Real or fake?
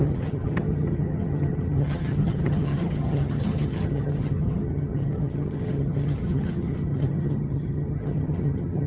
fake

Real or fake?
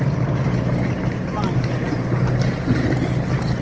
real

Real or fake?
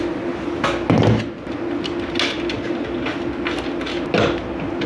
real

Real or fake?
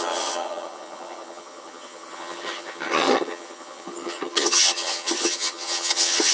fake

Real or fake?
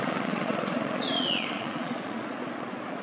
fake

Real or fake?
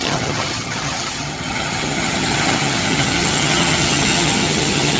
fake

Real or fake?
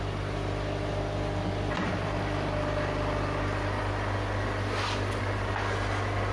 real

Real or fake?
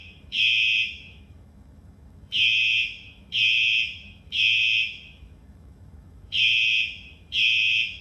fake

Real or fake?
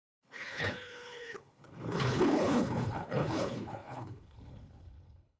fake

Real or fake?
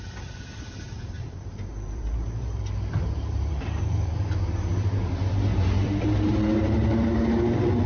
fake